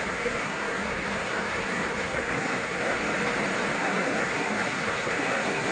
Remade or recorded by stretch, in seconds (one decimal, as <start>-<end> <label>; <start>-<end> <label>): 0.0-3.0 remade; 3.0-3.8 recorded; 3.8-5.7 remade